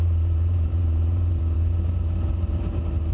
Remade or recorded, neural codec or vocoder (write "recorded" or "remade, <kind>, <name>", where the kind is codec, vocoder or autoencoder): remade, vocoder, BigVGAN v2